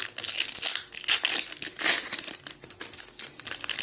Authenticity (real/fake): real